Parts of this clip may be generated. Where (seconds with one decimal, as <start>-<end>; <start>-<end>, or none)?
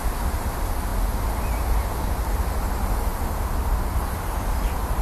none